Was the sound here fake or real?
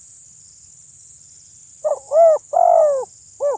real